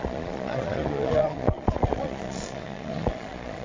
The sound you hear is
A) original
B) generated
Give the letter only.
B